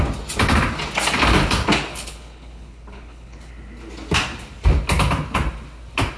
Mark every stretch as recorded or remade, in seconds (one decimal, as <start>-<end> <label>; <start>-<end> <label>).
0.0-1.9 recorded; 1.9-3.5 remade; 3.5-6.2 recorded